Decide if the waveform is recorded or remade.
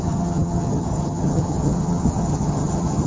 remade